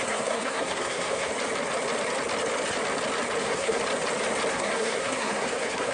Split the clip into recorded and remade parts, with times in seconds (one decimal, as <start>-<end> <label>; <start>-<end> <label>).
0.0-1.3 remade; 1.3-3.4 recorded; 3.4-3.8 remade; 3.8-4.5 recorded; 4.5-5.9 remade